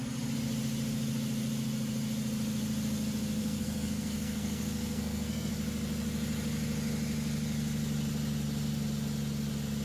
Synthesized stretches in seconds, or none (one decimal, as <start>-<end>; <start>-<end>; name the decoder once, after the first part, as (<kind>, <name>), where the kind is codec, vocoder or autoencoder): 3.4-5.5 (codec, SNAC)